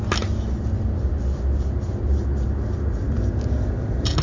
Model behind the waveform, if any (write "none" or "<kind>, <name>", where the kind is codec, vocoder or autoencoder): none